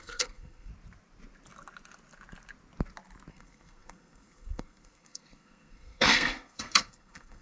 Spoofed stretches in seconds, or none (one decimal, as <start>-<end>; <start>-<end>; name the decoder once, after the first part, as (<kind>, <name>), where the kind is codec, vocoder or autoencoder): 0.0-0.7 (codec, SNAC); 3.3-7.4